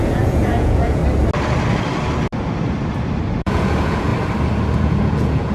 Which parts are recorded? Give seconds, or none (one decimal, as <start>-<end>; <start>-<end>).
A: 1.0-3.4; 4.1-4.7